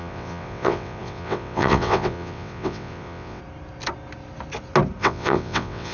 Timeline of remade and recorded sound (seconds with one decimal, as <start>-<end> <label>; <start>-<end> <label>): 0.0-3.4 remade; 3.4-5.0 recorded; 5.0-5.9 remade